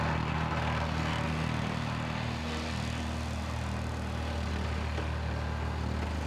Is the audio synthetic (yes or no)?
no